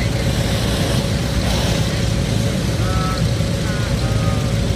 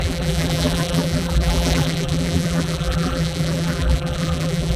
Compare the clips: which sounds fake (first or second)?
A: second